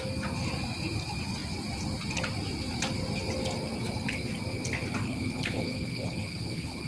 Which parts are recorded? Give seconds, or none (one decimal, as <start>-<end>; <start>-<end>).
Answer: 0.0-5.0